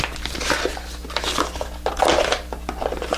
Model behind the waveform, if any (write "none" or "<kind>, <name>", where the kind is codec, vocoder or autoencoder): none